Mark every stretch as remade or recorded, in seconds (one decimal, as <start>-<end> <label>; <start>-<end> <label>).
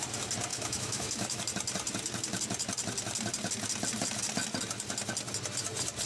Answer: 0.0-0.5 recorded; 0.5-1.4 remade; 1.4-6.1 recorded